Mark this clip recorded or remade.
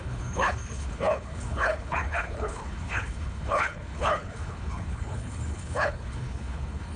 remade